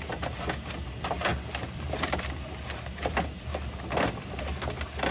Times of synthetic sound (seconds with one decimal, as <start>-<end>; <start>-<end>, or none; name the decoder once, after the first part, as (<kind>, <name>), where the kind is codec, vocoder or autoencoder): none